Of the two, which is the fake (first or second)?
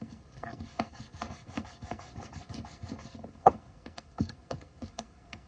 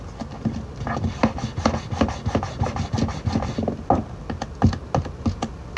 first